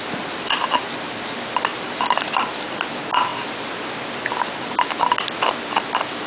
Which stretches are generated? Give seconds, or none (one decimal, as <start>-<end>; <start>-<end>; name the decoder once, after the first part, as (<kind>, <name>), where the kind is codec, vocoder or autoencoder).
1.7-2.3 (vocoder, BigVGAN v2)